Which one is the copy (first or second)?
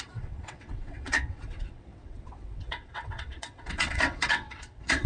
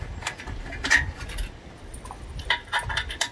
first